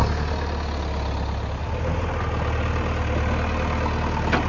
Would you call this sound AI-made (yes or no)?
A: no